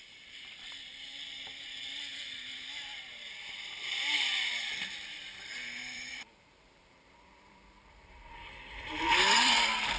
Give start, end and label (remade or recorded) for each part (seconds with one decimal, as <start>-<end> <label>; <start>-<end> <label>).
0.0-10.0 remade